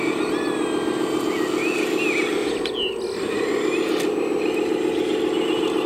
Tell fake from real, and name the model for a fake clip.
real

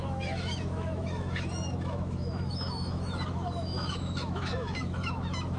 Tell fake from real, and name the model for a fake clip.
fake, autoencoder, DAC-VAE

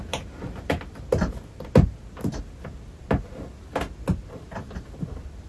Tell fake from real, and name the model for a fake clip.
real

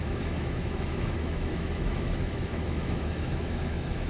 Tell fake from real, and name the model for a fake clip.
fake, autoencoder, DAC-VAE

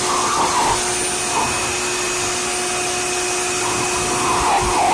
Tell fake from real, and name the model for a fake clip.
real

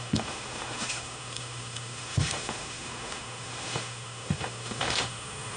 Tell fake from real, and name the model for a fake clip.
fake, autoencoder, DAC-VAE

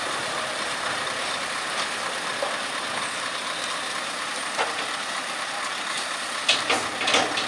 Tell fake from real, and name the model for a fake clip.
real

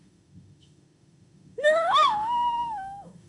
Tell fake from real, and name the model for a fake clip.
fake, autoencoder, DAC-VAE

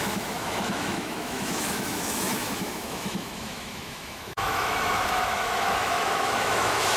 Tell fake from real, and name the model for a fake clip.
fake, autoencoder, DAC-VAE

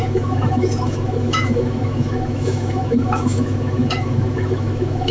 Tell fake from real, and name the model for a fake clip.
fake, autoencoder, DAC-VAE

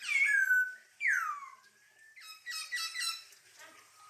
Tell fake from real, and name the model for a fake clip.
real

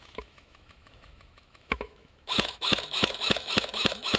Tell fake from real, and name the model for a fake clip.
fake, autoencoder, DAC-VAE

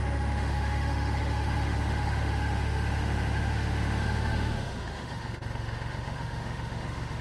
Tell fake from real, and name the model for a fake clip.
fake, autoencoder, DAC-VAE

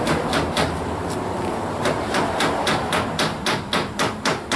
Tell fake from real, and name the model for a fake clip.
real